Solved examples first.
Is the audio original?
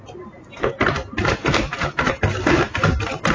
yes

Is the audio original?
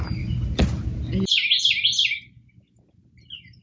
yes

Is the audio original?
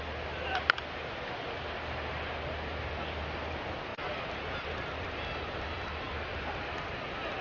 yes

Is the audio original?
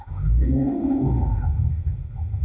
no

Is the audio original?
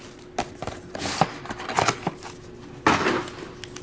yes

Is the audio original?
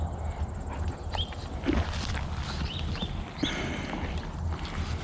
yes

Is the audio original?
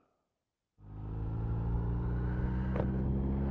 yes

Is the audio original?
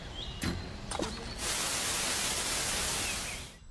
yes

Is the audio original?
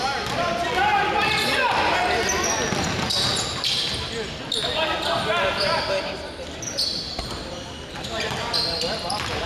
yes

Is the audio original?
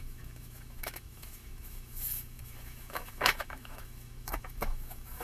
no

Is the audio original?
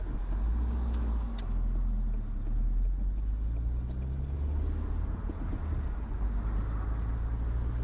yes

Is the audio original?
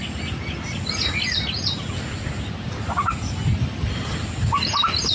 yes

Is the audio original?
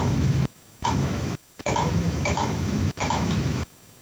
no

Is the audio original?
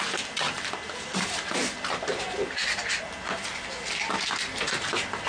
yes